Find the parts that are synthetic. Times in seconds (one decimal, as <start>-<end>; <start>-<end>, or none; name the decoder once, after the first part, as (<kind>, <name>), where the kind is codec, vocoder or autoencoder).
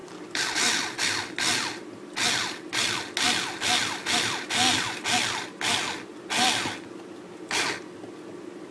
none